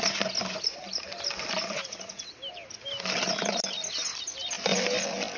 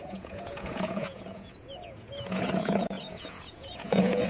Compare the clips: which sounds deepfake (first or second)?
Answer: second